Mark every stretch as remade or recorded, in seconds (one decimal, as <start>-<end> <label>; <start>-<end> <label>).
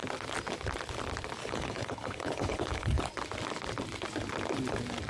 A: 0.0-1.4 recorded; 1.4-3.1 remade; 3.1-5.1 recorded